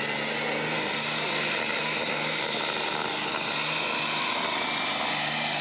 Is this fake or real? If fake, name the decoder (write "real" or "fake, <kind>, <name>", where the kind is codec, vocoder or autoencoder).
real